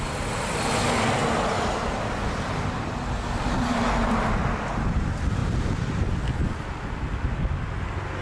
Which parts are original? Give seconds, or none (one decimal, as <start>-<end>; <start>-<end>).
0.0-8.2